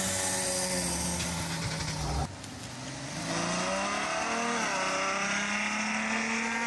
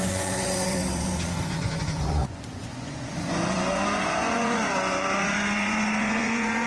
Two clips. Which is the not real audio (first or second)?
second